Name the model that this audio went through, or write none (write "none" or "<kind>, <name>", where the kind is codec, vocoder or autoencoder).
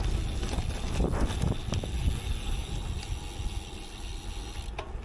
none